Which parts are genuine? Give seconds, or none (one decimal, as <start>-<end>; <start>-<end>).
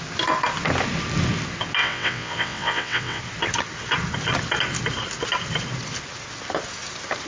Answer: 0.0-1.8; 3.2-7.3